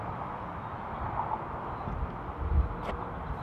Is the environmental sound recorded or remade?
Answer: recorded